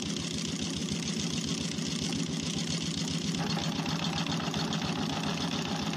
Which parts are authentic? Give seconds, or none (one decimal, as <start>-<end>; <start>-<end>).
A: 0.0-6.0